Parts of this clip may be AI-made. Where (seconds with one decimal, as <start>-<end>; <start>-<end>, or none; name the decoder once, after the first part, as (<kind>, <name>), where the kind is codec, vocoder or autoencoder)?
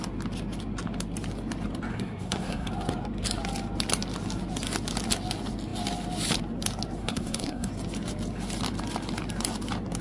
1.9-2.7 (codec, SNAC); 7.0-7.7